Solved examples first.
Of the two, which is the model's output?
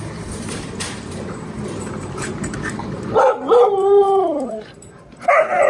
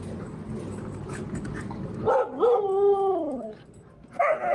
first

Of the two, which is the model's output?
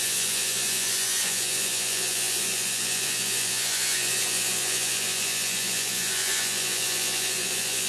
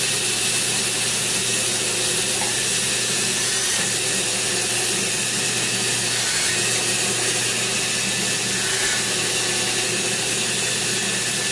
first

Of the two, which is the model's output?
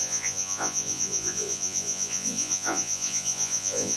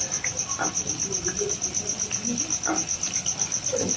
first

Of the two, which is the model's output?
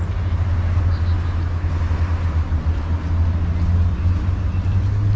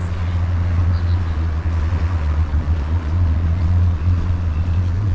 second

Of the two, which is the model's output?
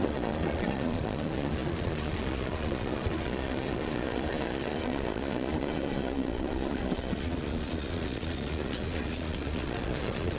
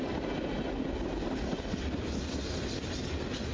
first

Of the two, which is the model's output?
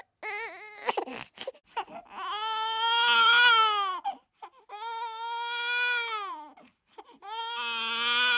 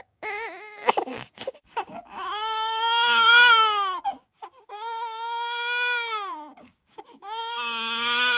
second